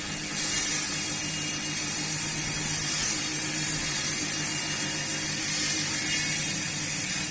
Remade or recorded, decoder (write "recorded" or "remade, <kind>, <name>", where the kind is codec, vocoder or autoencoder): recorded